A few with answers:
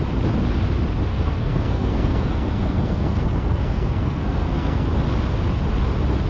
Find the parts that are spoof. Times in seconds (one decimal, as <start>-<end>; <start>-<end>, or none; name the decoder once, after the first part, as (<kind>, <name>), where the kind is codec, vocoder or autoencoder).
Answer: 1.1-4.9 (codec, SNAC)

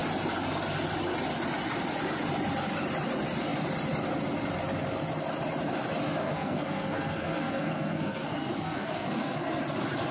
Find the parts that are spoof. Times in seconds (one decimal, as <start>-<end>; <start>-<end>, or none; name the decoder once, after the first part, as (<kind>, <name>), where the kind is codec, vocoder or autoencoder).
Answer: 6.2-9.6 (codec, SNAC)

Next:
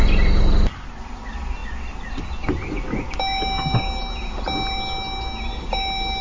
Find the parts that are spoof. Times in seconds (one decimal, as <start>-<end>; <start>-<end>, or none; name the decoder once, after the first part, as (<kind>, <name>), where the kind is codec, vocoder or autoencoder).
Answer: none

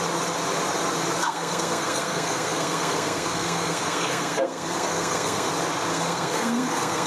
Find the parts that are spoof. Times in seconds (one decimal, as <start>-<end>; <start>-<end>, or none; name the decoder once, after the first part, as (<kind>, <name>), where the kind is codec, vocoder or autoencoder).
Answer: 1.2-5.5 (codec, SNAC); 5.9-7.1